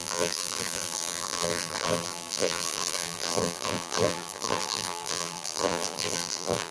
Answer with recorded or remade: remade